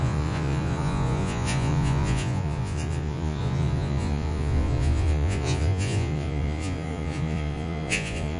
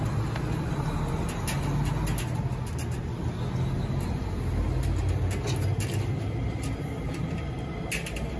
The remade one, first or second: first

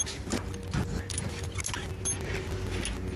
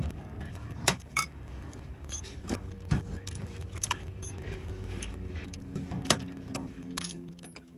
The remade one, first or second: second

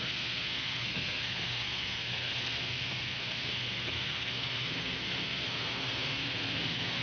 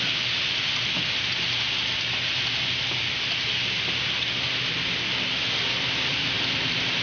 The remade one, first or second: first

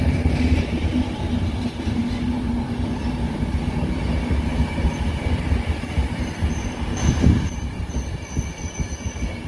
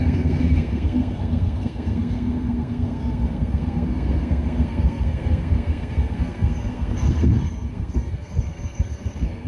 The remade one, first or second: second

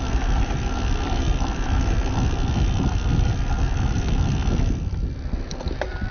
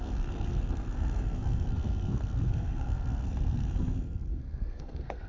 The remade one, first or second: second